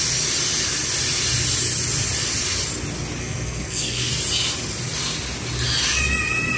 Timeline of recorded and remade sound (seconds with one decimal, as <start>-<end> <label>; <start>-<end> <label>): 0.0-3.2 recorded; 3.2-4.1 remade; 4.1-6.6 recorded